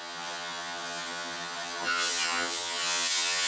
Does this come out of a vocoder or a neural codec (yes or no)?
yes